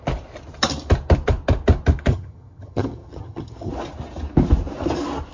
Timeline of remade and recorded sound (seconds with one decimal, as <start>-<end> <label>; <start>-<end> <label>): 0.0-2.1 recorded; 2.1-3.7 remade; 3.7-5.3 recorded